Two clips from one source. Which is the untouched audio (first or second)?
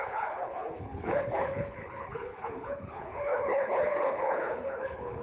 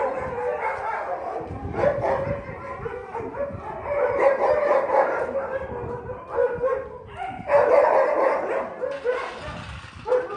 second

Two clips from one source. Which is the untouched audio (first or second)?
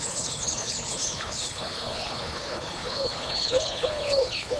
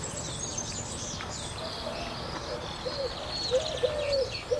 second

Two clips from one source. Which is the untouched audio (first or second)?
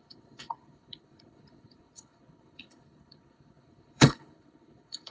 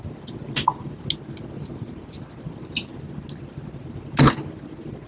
second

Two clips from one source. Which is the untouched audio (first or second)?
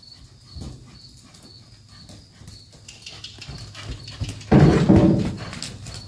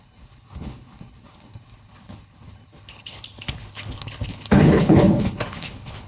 first